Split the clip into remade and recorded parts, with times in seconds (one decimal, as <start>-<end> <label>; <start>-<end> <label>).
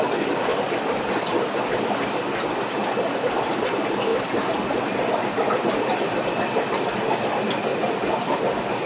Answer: 0.0-8.9 recorded